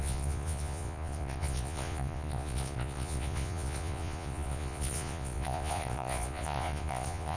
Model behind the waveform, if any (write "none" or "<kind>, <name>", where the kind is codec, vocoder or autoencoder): vocoder, Vocos